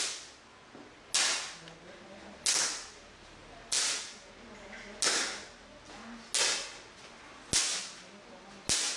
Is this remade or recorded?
recorded